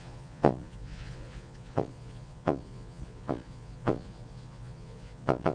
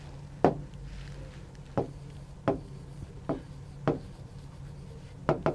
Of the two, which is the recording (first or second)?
second